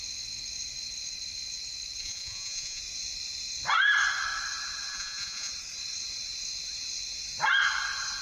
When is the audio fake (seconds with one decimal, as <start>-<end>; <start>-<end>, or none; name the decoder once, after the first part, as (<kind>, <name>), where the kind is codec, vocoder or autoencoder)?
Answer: 2.0-2.8 (vocoder, Vocos); 4.9-5.5